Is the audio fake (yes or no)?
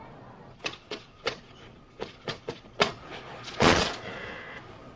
yes